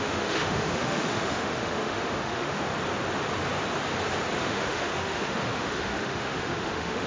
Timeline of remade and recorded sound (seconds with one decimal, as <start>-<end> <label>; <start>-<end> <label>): 0.0-2.7 remade; 2.7-4.4 recorded; 4.4-7.1 remade